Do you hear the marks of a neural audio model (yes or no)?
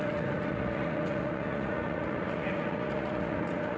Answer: yes